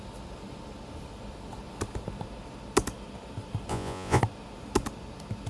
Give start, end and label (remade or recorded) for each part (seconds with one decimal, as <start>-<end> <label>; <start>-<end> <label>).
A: 0.0-3.7 recorded; 3.7-4.2 remade; 4.2-5.5 recorded